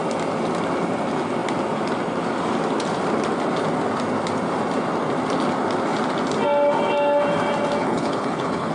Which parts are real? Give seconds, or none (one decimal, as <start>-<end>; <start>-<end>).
0.0-7.8